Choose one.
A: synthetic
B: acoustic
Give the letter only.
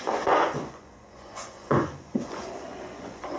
A